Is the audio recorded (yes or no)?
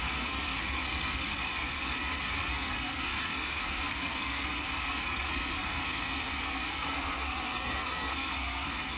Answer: no